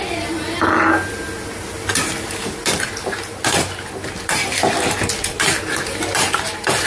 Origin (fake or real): real